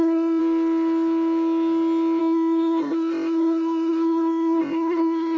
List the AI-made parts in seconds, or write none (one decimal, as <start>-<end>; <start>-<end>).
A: 0.0-0.4; 2.2-5.4